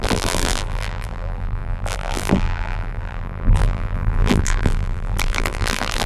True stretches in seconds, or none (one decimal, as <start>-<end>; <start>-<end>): none